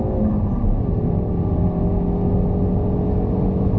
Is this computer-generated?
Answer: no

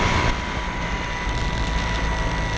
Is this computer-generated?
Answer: no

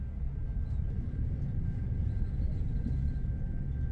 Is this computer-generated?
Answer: no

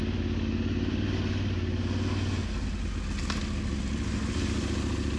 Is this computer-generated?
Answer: no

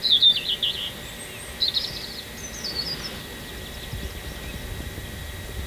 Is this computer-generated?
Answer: no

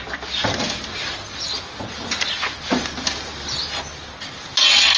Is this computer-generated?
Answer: no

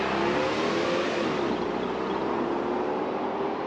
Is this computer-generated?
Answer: no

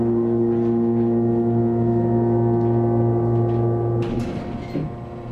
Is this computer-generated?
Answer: no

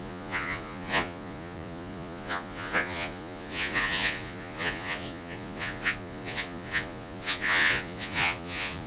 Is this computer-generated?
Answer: yes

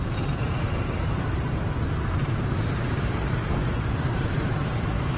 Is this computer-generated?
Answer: yes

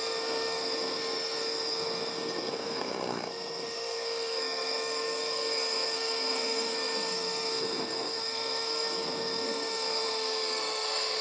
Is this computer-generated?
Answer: yes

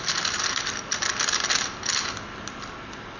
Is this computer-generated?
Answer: no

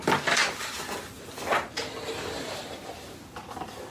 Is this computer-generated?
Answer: no